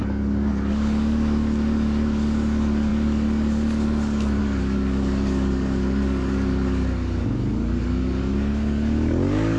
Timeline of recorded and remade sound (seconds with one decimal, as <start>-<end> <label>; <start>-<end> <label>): 0.0-9.6 remade

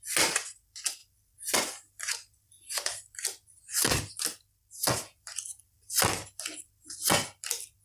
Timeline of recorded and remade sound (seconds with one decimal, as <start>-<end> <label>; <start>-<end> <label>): 0.0-7.8 recorded

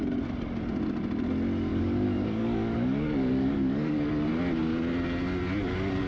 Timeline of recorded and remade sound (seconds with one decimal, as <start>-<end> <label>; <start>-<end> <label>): 0.0-1.7 recorded; 1.7-4.1 remade; 4.1-6.1 recorded

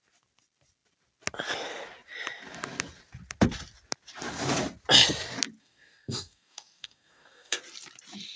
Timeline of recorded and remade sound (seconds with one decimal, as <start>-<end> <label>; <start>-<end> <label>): 0.0-5.6 recorded; 5.6-7.6 remade; 7.6-8.4 recorded